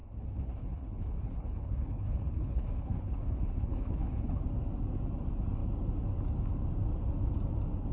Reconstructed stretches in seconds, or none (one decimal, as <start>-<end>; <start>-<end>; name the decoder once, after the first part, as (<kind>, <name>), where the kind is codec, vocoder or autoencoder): 0.0-4.4 (codec, HILCodec)